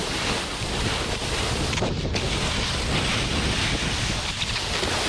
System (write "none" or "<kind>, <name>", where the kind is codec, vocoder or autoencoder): none